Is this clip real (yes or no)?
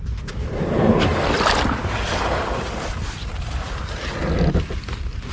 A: yes